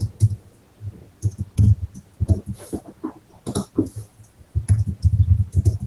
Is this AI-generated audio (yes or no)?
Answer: no